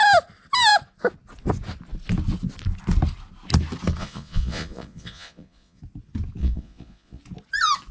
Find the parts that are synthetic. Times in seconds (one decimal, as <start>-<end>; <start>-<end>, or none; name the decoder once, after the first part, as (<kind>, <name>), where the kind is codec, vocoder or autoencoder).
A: 4.0-5.8 (vocoder, Vocos); 6.4-7.2